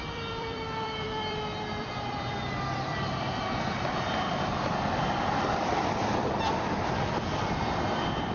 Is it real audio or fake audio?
fake